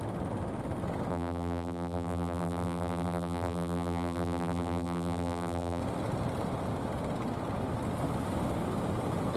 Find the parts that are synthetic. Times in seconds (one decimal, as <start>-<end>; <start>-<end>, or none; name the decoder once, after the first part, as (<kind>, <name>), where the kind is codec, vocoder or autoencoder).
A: 1.1-5.8 (vocoder, BigVGAN v2)

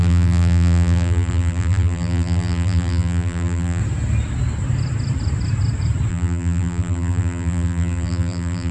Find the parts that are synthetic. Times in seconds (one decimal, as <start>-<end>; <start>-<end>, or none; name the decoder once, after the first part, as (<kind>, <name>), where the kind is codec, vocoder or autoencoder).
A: 0.0-3.8 (vocoder, BigVGAN v2); 6.1-8.7